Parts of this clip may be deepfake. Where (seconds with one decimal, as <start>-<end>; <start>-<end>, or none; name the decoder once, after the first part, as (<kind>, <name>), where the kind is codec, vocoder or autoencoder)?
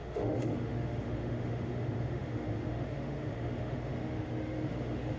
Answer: 0.0-5.2 (autoencoder, DAC-VAE)